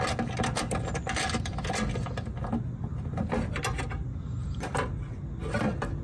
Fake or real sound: real